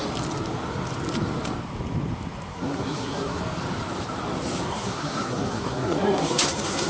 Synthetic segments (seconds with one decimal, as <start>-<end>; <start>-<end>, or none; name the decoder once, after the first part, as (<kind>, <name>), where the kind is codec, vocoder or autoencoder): 2.5-3.4 (codec, SNAC); 4.7-6.9